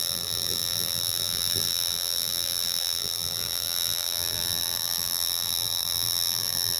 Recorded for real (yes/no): no